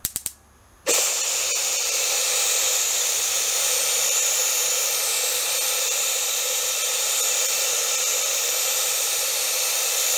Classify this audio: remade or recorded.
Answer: remade